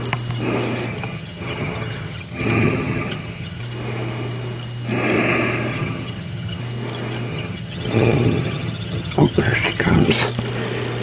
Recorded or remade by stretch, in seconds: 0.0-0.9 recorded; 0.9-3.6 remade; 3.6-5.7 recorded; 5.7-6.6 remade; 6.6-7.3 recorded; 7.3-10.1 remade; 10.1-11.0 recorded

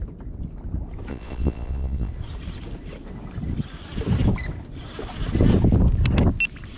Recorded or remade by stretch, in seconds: 0.0-1.1 recorded; 1.1-2.1 remade; 2.1-6.8 recorded

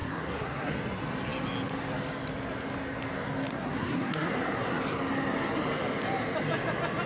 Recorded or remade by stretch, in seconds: 0.0-0.7 remade; 0.7-3.5 recorded; 3.5-4.8 remade; 4.8-7.1 recorded

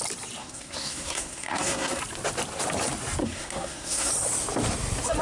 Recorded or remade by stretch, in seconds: 0.0-0.4 recorded; 0.4-2.0 remade; 2.0-3.2 recorded; 3.2-4.1 remade; 4.1-5.2 recorded

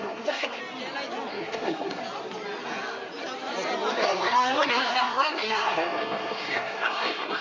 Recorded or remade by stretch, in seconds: 0.0-0.6 remade; 0.6-1.3 recorded; 1.3-2.0 remade; 2.0-3.9 recorded; 3.9-7.4 remade

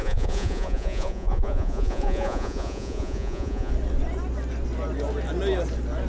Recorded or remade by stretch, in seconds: 0.0-3.7 remade; 3.7-6.1 recorded

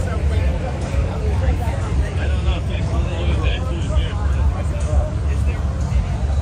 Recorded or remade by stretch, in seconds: 0.0-0.5 recorded; 0.5-4.3 remade; 4.3-4.9 recorded; 4.9-5.4 remade; 5.4-6.4 recorded

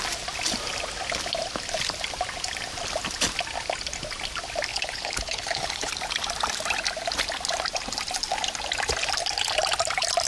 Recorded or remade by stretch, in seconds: 0.0-4.7 recorded; 4.7-5.9 remade; 5.9-10.3 recorded